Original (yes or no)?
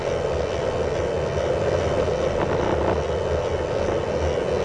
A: yes